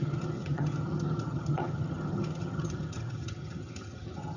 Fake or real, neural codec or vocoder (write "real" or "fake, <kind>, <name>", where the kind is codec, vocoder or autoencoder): fake, vocoder, HiFi-GAN